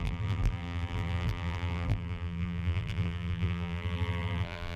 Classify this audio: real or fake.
fake